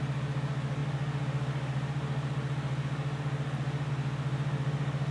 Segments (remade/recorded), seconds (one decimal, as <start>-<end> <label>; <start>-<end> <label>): 0.0-5.1 recorded